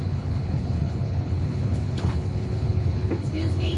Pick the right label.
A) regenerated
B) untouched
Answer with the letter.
A